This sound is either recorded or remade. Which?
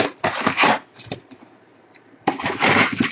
remade